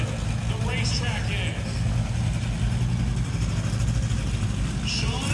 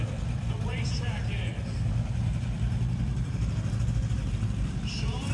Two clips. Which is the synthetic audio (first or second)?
second